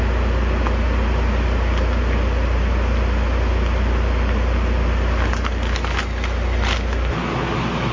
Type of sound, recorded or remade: recorded